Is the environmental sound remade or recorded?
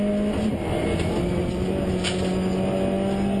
recorded